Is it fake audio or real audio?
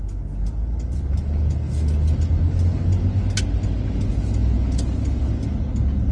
real